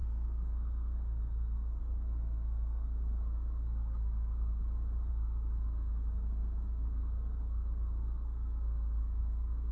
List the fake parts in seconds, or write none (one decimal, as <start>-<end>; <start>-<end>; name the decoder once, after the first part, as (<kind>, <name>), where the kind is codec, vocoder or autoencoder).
0.0-4.6 (codec, SNAC); 5.1-9.7